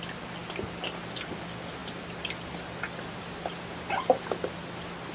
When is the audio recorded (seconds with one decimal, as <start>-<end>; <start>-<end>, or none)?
0.0-5.1